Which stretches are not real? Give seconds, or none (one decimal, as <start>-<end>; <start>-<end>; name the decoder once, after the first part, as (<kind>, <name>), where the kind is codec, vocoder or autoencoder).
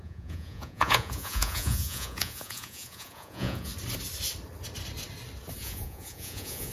0.0-3.7 (vocoder, Vocos); 5.6-6.7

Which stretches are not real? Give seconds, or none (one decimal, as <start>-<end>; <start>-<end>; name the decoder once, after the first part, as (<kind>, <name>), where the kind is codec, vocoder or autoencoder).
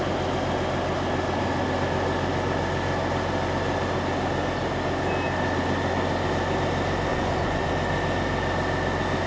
7.1-7.7 (vocoder, Vocos)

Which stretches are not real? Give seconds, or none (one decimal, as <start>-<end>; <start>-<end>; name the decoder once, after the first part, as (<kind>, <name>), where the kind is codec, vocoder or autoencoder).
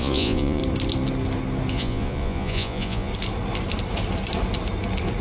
0.0-0.6 (vocoder, Vocos); 1.7-3.1